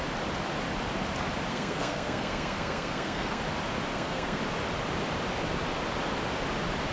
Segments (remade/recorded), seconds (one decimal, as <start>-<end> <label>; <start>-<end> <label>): 0.0-1.5 recorded; 1.5-3.4 remade; 3.4-3.9 recorded; 3.9-4.4 remade; 4.4-6.9 recorded